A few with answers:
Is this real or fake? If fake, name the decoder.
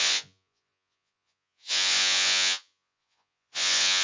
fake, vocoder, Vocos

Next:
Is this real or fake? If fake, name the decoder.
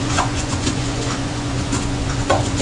fake, vocoder, Vocos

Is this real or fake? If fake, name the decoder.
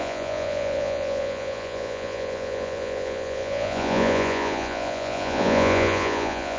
fake, vocoder, Vocos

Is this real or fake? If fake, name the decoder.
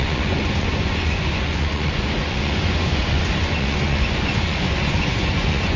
fake, vocoder, Vocos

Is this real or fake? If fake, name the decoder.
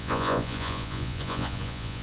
fake, vocoder, Vocos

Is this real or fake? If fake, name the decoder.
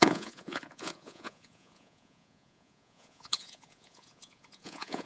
fake, vocoder, Vocos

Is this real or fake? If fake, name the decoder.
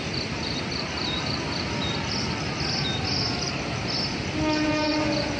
real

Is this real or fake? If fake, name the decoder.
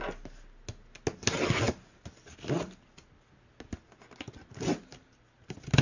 real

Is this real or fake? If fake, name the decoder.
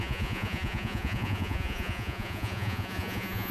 fake, vocoder, Vocos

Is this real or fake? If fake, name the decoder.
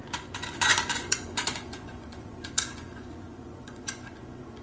fake, vocoder, Vocos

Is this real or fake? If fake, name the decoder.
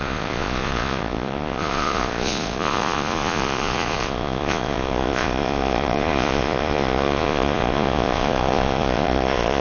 fake, vocoder, Vocos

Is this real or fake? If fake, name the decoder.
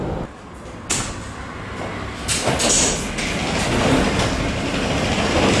real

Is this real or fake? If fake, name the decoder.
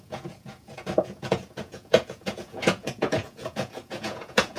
fake, vocoder, Vocos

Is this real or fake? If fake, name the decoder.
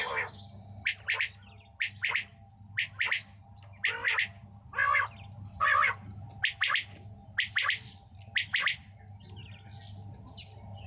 real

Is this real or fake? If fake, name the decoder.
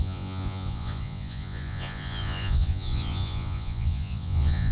fake, vocoder, Vocos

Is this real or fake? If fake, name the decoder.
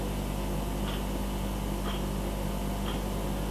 real